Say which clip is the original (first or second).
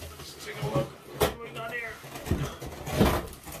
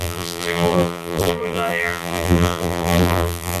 first